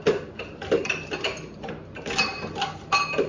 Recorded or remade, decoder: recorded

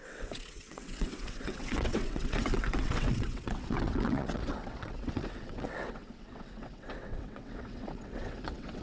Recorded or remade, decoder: remade, vocoder, WaveNeXt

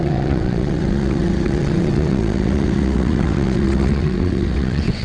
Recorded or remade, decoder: remade, vocoder, WaveNeXt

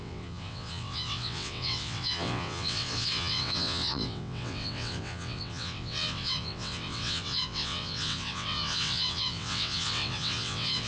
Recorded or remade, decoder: remade, vocoder, WaveNeXt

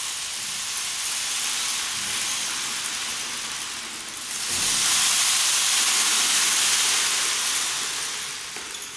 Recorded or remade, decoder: recorded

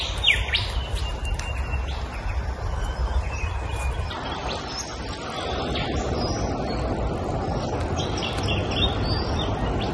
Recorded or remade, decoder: recorded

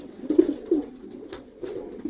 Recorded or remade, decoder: remade, vocoder, WaveNeXt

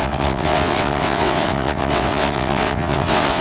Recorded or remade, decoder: remade, vocoder, WaveNeXt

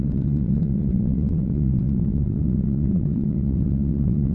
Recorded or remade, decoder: remade, vocoder, WaveNeXt